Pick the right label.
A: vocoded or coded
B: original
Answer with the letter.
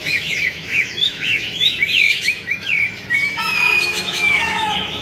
A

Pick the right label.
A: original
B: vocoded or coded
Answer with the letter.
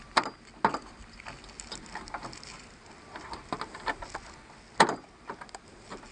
A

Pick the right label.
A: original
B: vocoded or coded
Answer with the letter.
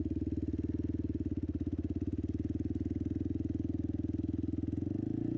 A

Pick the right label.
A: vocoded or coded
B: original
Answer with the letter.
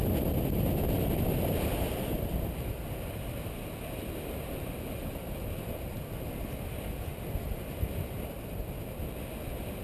B